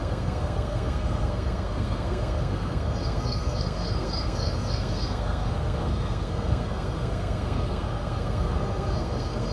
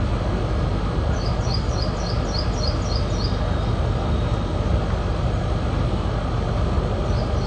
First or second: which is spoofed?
first